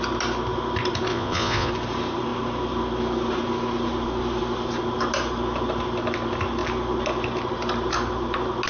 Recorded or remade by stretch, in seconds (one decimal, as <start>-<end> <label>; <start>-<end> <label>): 0.0-1.1 recorded; 1.1-1.7 remade; 1.7-8.7 recorded